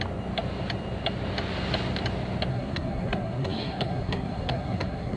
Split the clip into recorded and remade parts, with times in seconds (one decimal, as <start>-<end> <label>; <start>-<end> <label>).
0.0-2.5 recorded; 2.5-5.2 remade